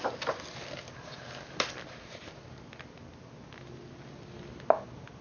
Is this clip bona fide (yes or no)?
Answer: yes